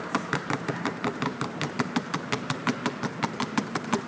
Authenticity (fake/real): fake